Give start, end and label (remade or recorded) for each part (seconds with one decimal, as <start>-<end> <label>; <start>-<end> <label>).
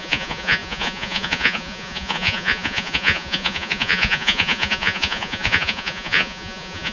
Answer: 0.0-6.9 remade